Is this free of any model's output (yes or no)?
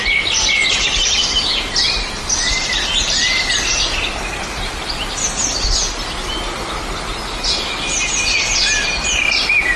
yes